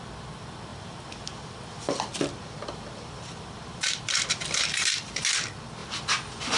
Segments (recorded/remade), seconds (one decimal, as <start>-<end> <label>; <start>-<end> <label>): 0.0-0.7 recorded; 0.7-4.7 remade; 4.7-6.6 recorded